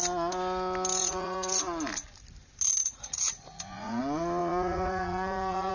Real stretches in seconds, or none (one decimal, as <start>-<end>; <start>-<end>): 0.0-1.0; 1.6-2.8; 4.0-4.4